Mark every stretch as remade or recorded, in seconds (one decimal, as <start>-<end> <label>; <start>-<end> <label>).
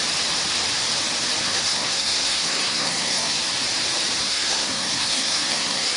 0.0-1.4 recorded; 1.4-3.4 remade; 3.4-4.2 recorded; 4.2-6.0 remade